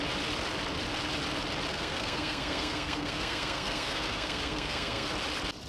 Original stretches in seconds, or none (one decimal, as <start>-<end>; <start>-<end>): 0.0-1.7; 5.1-5.7